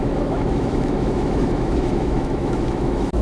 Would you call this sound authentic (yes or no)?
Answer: no